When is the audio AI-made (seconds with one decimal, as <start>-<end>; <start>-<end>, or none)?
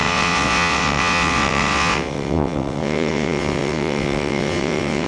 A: 0.0-5.1